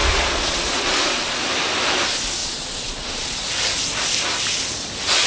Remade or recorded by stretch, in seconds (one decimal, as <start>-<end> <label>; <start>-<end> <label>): 0.0-0.9 remade; 0.9-2.4 recorded; 2.4-3.5 remade; 3.5-5.3 recorded

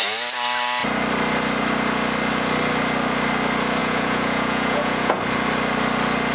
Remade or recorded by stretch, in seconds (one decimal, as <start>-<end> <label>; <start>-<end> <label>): 0.0-3.8 recorded; 3.8-5.2 remade; 5.2-6.3 recorded

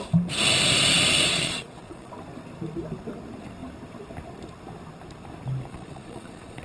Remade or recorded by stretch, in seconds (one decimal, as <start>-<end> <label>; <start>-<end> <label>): 0.0-1.3 recorded; 1.3-2.1 remade; 2.1-5.7 recorded; 5.7-6.6 remade

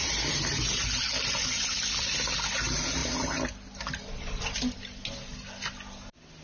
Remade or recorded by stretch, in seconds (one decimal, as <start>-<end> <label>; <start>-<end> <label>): 0.0-6.4 recorded